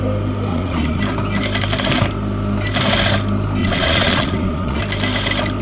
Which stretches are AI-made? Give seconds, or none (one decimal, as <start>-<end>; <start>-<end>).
0.5-1.0; 3.6-4.8